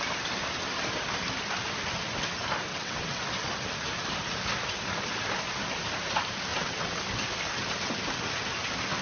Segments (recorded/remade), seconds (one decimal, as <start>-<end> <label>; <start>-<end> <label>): 0.0-2.7 recorded; 2.7-3.2 remade; 3.2-6.5 recorded; 6.5-7.0 remade; 7.0-9.0 recorded